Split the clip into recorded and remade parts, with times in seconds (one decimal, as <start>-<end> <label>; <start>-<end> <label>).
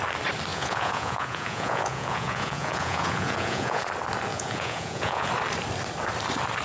0.0-0.5 recorded; 0.5-3.8 remade; 3.8-4.3 recorded; 4.3-5.3 remade; 5.3-6.6 recorded